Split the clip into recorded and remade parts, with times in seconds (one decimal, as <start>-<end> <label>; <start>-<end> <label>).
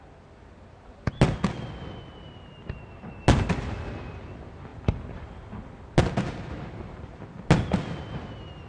0.0-8.7 recorded